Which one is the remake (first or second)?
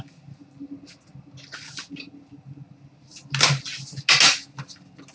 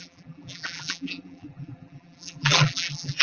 second